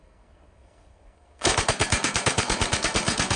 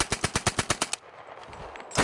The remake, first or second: first